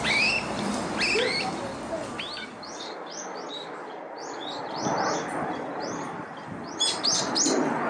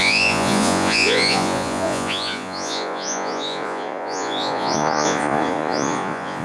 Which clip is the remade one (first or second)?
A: second